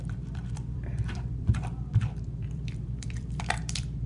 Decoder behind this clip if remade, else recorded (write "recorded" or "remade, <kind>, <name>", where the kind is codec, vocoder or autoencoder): remade, vocoder, BigVGAN v2